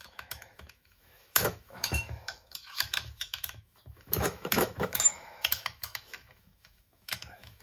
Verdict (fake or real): fake